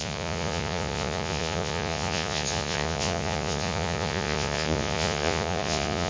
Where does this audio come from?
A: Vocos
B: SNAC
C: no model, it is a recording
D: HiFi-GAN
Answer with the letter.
A